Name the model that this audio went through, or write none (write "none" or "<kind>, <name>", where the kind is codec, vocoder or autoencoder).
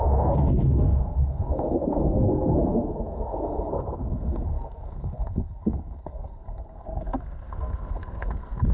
codec, SNAC